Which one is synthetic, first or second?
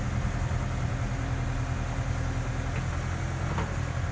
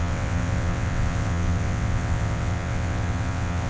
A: second